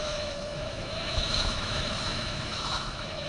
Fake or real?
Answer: fake